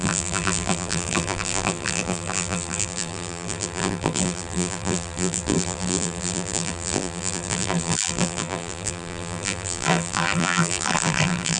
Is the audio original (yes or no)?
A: no